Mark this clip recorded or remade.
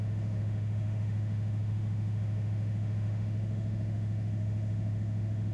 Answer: remade